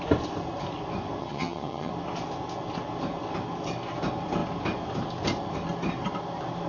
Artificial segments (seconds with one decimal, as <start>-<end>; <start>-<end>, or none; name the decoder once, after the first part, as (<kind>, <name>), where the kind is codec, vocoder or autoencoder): 1.2-1.9 (vocoder, HiFi-GAN)